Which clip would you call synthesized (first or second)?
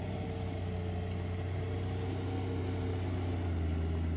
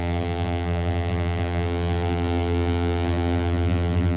second